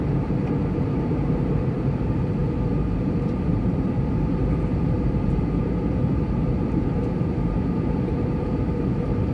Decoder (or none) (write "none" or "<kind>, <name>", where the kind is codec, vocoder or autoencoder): vocoder, BigVGAN v2